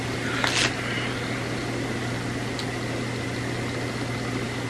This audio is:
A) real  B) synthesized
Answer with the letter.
A